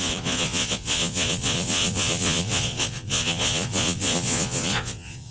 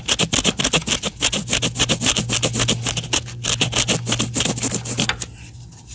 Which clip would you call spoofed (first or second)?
first